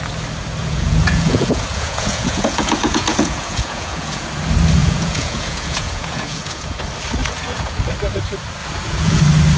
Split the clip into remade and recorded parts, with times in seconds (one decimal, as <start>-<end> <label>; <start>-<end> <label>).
0.0-0.6 recorded; 0.6-4.2 remade; 4.2-4.8 recorded; 4.8-6.8 remade; 6.8-7.2 recorded; 7.2-7.8 remade; 7.8-8.6 recorded; 8.6-9.2 remade; 9.2-9.6 recorded